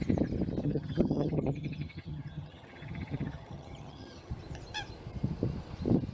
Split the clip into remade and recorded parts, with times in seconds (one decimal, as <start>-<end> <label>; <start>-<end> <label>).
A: 0.0-0.6 recorded; 0.6-4.3 remade; 4.3-6.1 recorded